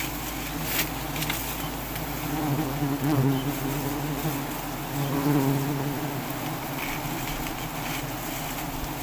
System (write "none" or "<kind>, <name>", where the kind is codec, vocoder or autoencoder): none